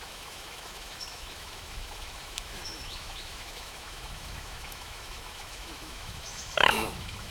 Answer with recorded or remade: remade